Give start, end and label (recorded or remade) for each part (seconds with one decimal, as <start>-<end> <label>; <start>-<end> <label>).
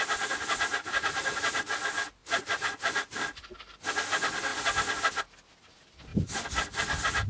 0.0-0.7 recorded; 0.7-1.6 remade; 1.6-2.2 recorded; 2.2-3.9 remade; 3.9-7.3 recorded